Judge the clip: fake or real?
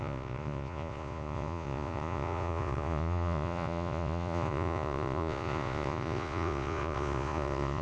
fake